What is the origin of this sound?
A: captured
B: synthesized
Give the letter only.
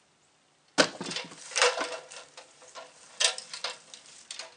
A